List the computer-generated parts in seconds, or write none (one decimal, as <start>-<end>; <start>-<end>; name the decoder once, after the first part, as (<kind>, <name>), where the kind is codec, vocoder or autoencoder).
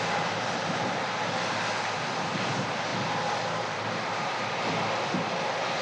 0.0-2.9 (vocoder, BigVGAN v2); 3.5-5.8